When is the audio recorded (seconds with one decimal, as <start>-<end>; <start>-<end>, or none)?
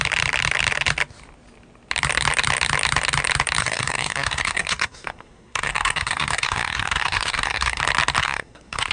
0.0-3.6; 7.8-8.2